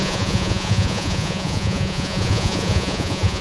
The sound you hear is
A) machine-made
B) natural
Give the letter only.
A